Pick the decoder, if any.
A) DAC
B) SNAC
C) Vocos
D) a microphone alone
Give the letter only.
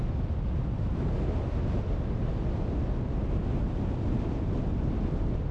D